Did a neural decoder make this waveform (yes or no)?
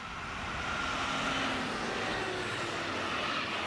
no